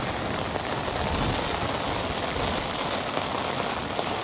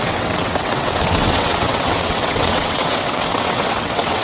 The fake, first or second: second